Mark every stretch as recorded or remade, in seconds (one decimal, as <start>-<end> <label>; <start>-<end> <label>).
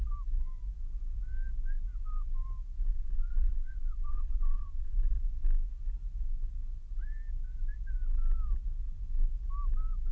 0.0-2.9 recorded; 2.9-5.1 remade; 5.1-10.1 recorded